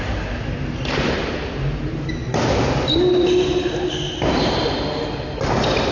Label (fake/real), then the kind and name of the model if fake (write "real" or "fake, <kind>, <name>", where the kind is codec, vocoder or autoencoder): real